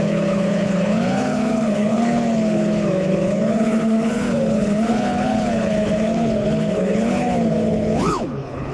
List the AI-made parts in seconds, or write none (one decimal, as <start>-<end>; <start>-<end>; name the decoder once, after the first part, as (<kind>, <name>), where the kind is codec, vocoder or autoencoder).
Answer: 0.0-8.7 (codec, HILCodec)